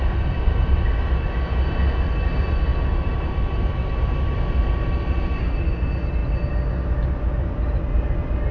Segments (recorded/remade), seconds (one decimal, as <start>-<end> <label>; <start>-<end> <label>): 0.0-8.5 recorded